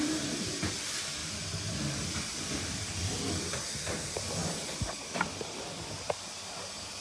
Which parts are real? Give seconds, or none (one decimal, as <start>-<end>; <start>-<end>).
1.2-3.5; 4.4-5.6